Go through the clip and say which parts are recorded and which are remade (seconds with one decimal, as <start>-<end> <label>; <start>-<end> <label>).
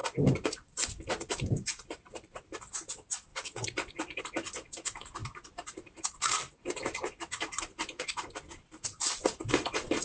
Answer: 0.0-2.8 remade; 2.8-3.3 recorded; 3.3-4.2 remade; 4.2-5.2 recorded; 5.2-9.2 remade; 9.2-10.0 recorded